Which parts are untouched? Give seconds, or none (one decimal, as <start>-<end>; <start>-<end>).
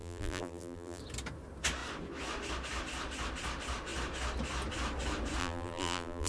1.0-5.4